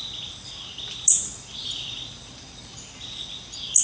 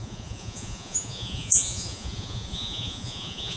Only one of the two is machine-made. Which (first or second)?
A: second